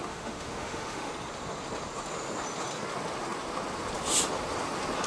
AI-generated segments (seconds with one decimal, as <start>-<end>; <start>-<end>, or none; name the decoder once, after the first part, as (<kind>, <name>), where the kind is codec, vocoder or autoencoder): 0.0-1.1 (autoencoder, DAC-VAE)